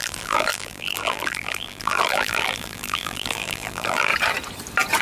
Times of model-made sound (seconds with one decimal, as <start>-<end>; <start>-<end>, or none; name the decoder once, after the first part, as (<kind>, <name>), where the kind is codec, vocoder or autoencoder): 0.0-4.1 (vocoder, BigVGAN v2)